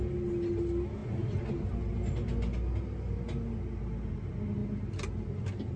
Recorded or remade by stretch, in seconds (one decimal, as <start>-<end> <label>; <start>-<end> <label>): 0.0-5.8 recorded